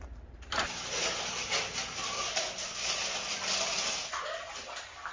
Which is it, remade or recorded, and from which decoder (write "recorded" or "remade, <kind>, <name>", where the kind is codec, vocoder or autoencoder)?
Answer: recorded